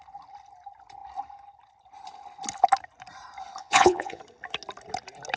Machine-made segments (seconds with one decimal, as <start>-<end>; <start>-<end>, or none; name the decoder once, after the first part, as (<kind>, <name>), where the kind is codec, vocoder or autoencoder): 3.6-4.2 (vocoder, Vocos)